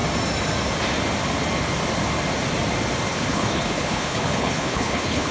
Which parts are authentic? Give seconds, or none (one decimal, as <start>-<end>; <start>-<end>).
0.0-3.1